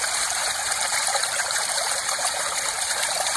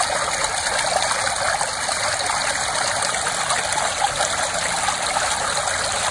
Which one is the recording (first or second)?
second